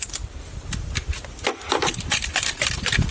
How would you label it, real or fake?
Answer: real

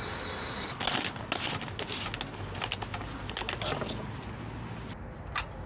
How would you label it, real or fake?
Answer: real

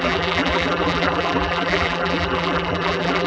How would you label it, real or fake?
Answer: fake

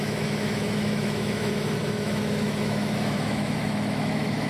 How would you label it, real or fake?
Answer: fake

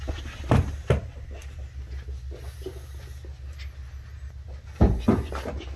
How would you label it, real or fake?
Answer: real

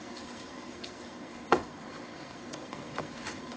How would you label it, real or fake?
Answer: fake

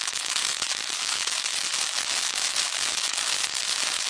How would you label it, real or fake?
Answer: fake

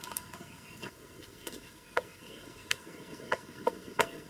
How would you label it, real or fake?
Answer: fake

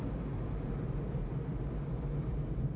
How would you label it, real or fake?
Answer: real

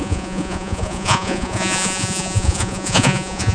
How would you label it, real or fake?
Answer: fake